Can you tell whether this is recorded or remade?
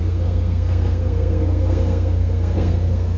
remade